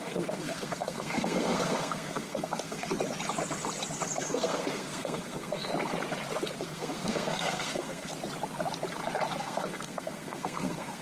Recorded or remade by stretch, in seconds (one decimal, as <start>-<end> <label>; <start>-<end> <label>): 0.0-2.9 remade; 2.9-4.2 recorded; 4.2-5.7 remade; 5.7-6.6 recorded; 6.6-8.1 remade; 8.1-9.4 recorded; 9.4-11.0 remade